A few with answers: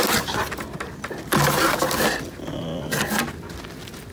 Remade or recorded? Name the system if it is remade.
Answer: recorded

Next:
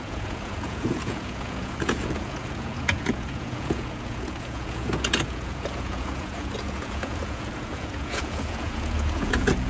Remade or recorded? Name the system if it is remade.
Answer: remade, vocoder, Vocos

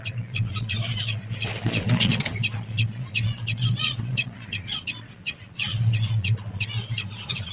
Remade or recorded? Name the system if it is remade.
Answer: remade, vocoder, Vocos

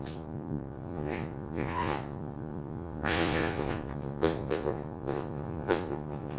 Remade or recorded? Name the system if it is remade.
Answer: remade, vocoder, Vocos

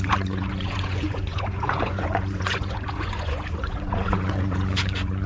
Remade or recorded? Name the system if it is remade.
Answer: remade, vocoder, Vocos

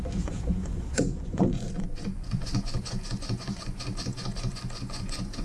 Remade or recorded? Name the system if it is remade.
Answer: remade, vocoder, Vocos